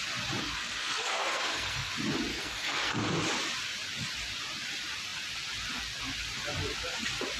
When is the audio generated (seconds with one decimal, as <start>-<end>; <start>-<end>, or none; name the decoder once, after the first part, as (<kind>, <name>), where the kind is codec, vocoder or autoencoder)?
0.4-1.9 (codec, SNAC); 2.3-3.0